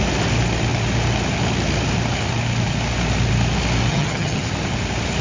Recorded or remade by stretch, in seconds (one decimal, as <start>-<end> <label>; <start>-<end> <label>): 0.0-3.9 recorded; 3.9-4.5 remade; 4.5-5.2 recorded